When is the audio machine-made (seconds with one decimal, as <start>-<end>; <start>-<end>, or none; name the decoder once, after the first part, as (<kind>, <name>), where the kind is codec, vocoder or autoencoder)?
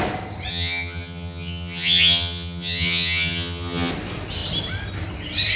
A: 0.5-3.9 (vocoder, HiFi-GAN)